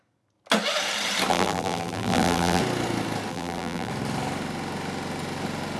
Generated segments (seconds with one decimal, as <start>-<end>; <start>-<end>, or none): 1.3-2.6; 3.3-3.9